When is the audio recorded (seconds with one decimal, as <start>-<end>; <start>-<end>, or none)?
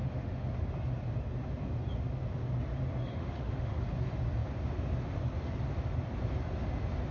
0.5-3.0; 3.8-7.1